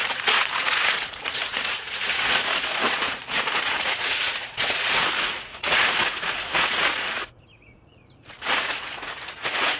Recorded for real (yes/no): no